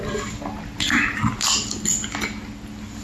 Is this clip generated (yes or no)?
no